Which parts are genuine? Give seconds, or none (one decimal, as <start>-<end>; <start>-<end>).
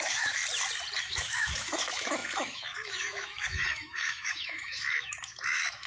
0.4-1.0